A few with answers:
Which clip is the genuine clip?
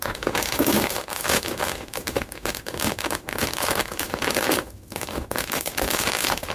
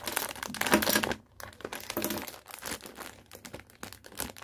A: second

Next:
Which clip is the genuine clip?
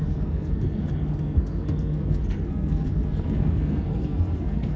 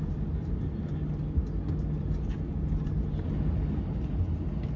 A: second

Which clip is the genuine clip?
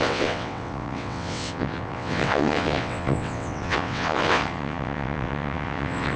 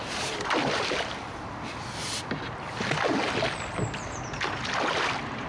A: second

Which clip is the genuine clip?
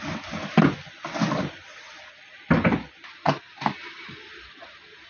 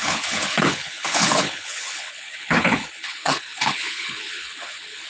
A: first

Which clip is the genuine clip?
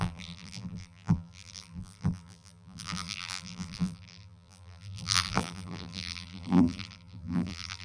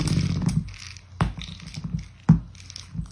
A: second